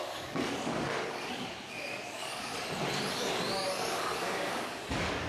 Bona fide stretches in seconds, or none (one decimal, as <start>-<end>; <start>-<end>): 2.5-3.1